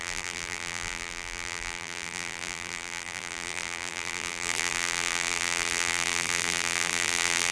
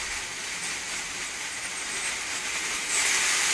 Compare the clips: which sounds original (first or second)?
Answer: second